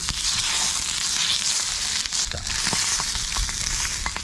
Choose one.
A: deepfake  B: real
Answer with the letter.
B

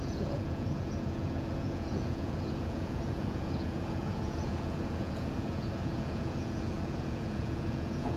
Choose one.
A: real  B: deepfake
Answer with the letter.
B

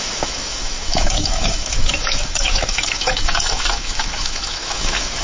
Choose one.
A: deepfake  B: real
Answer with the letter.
A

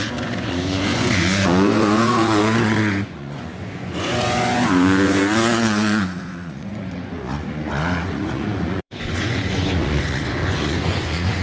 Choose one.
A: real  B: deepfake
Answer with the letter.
B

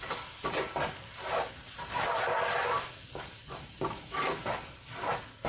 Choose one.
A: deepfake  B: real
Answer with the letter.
B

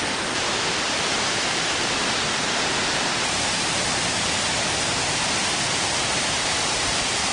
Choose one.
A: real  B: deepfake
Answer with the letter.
B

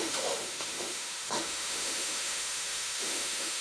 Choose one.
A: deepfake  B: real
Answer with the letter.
A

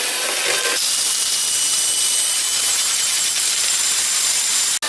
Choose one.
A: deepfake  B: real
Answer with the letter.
B